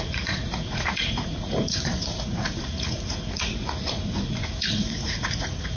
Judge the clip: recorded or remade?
remade